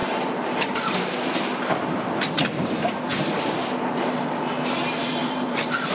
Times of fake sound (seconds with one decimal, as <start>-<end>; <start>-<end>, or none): 0.0-1.1; 4.8-5.9